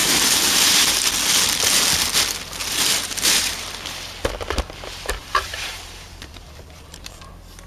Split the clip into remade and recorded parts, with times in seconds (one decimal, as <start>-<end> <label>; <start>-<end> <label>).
0.0-1.1 remade; 1.1-2.6 recorded; 2.6-3.7 remade; 3.7-5.2 recorded; 5.2-7.3 remade; 7.3-7.7 recorded